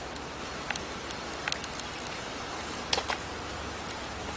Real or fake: real